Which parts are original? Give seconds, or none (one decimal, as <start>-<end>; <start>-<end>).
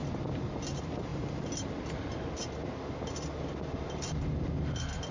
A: 0.0-5.1